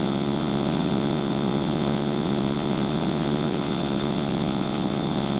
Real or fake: fake